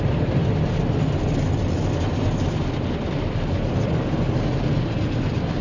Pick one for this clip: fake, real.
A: real